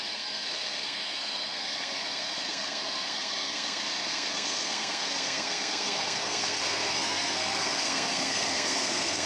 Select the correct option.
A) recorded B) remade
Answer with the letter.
B